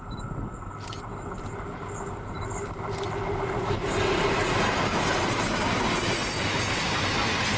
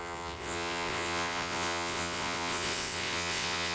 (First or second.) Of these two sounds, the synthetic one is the second